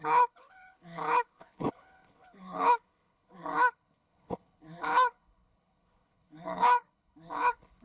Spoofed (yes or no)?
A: yes